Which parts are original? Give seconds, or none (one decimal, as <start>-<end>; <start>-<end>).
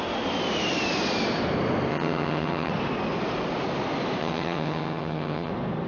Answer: 0.0-1.9; 2.7-4.2; 5.5-5.9